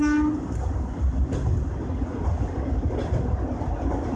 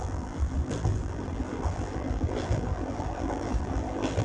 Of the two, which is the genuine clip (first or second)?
first